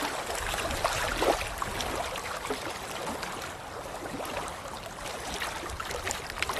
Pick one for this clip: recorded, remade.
recorded